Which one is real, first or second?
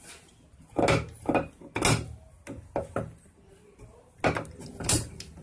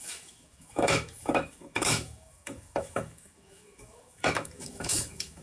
first